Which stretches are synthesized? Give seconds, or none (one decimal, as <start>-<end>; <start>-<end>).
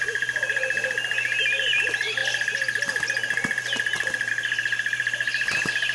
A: none